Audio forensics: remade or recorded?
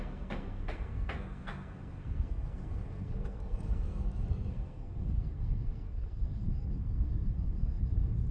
remade